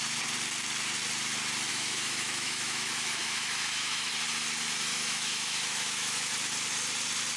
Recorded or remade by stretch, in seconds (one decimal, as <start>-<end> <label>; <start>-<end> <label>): 0.0-1.7 recorded; 1.7-4.1 remade; 4.1-4.9 recorded; 4.9-6.3 remade; 6.3-7.4 recorded